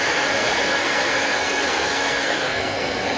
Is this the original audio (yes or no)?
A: no